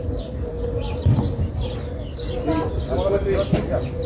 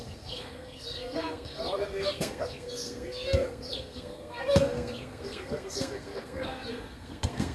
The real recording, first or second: first